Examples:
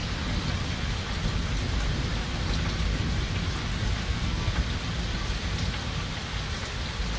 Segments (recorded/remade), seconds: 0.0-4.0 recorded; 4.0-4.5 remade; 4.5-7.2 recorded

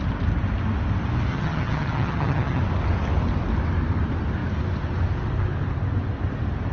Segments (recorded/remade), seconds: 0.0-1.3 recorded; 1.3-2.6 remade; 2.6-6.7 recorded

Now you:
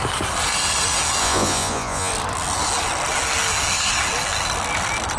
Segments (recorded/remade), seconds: 0.0-1.2 recorded; 1.2-2.1 remade; 2.1-5.2 recorded

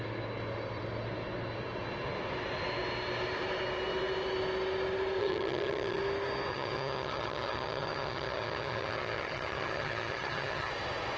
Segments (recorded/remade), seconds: 0.0-5.2 recorded; 5.2-6.0 remade; 6.0-6.5 recorded; 6.5-10.7 remade; 10.7-11.2 recorded